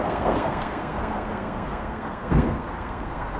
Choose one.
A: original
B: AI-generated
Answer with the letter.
B